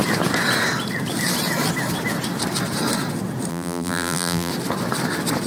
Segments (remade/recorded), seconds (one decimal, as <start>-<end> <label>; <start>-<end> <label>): 0.0-3.5 recorded; 3.5-4.5 remade; 4.5-5.5 recorded